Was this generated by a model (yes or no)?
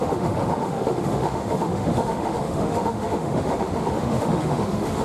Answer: yes